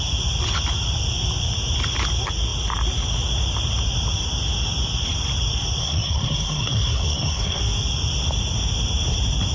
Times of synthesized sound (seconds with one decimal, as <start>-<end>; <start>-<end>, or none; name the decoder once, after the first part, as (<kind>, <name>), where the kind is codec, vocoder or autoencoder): 5.8-7.6 (codec, SNAC)